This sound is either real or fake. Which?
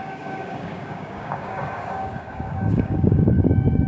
fake